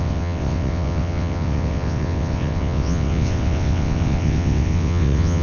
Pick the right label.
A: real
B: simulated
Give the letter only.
B